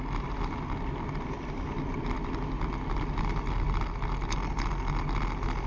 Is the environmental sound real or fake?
real